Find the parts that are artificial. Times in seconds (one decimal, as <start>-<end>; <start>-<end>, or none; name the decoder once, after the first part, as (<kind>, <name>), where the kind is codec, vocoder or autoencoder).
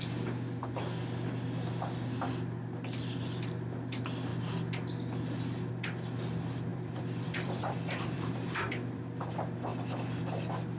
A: 6.7-9.2 (vocoder, BigVGAN v2)